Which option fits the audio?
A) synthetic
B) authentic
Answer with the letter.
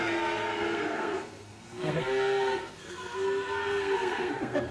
A